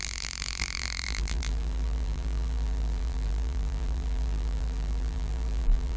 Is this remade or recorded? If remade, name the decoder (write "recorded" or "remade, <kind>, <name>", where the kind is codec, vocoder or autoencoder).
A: remade, vocoder, BigVGAN v2